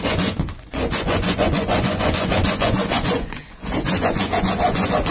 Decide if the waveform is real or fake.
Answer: fake